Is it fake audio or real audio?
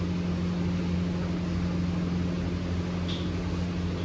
real